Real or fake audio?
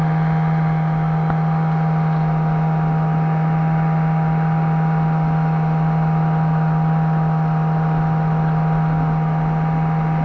real